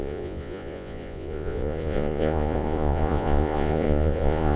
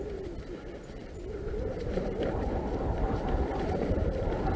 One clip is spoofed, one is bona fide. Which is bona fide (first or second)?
second